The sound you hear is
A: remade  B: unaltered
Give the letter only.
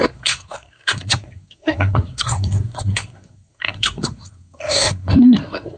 A